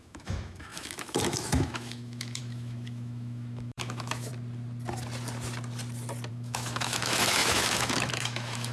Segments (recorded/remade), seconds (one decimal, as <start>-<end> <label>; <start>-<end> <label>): 0.0-4.3 remade; 4.3-6.3 recorded; 6.3-8.7 remade